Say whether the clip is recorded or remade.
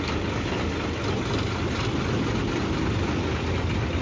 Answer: recorded